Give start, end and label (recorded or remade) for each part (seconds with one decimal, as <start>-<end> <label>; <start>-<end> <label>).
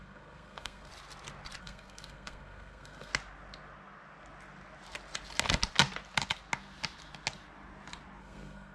0.0-0.9 remade; 0.9-1.6 recorded; 1.6-3.1 remade; 3.1-8.2 recorded; 8.2-8.7 remade